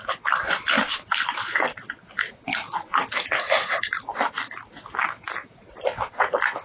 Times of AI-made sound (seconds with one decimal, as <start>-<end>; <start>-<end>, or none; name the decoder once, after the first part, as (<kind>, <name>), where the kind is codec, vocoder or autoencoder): none